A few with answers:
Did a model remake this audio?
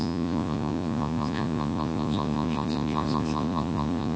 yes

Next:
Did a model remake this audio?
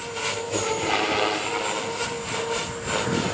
no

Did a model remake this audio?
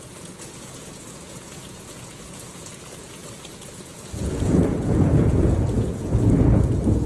yes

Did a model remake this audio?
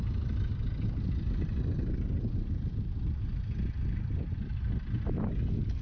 no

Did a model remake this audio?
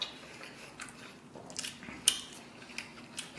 no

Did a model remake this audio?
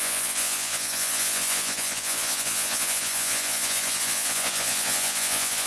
yes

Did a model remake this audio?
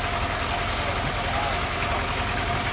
no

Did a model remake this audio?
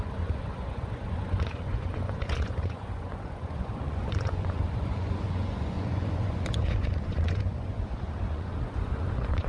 yes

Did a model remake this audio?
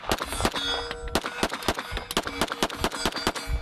no